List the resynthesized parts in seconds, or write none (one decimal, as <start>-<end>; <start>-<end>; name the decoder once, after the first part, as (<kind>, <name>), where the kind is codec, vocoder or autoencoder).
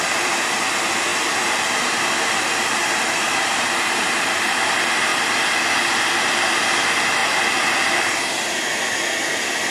0.0-5.1 (vocoder, BigVGAN v2); 6.2-7.2